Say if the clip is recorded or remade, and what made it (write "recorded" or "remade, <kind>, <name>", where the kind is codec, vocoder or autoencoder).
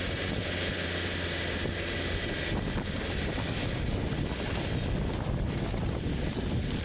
recorded